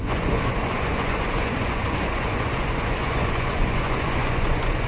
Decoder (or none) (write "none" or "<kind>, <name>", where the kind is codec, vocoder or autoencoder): vocoder, Vocos